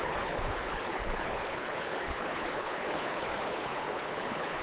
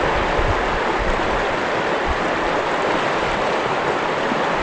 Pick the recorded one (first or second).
second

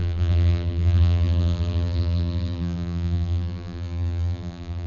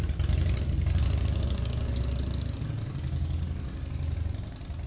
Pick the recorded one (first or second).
second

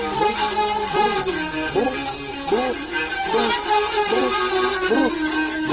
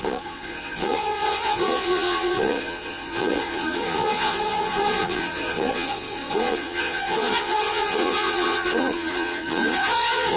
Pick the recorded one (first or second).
first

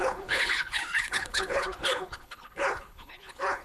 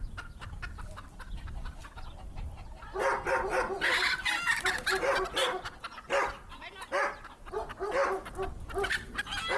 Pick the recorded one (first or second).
second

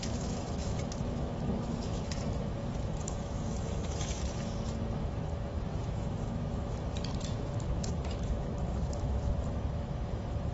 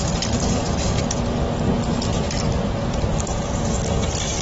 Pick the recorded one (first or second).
second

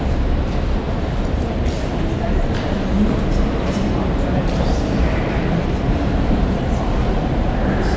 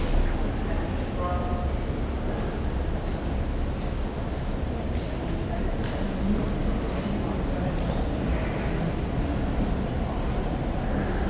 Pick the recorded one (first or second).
second